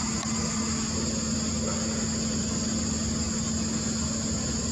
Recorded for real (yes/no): yes